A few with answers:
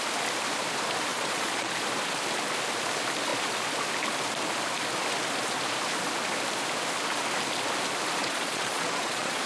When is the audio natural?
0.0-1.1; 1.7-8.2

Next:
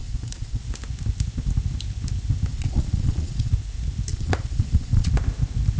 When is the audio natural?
0.6-2.5; 3.5-4.1; 5.1-5.8

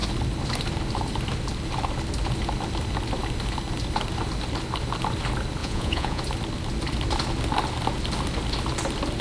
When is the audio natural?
0.0-5.6; 6.2-9.2

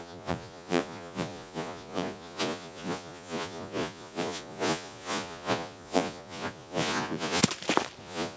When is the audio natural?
7.4-8.0

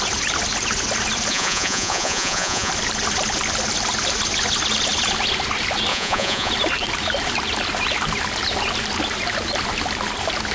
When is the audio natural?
0.0-1.3; 2.7-5.9; 6.5-10.5

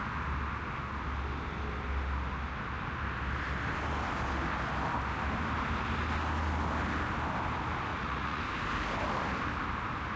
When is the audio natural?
0.0-7.9; 8.4-10.2

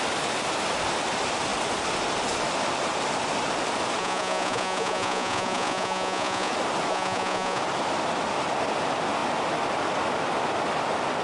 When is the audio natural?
0.0-4.0; 6.5-6.9; 7.6-11.2